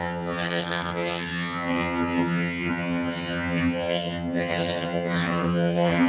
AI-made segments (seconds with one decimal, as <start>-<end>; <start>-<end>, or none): 0.0-6.1